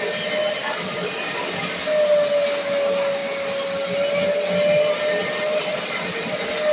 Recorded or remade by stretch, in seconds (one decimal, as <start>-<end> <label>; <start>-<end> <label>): 0.0-6.7 recorded